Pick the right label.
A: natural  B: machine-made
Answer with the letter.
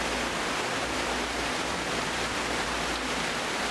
B